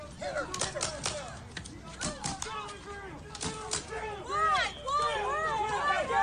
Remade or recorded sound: recorded